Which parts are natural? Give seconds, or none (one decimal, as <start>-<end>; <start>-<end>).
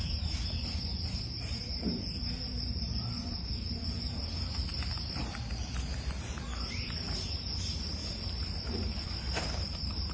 none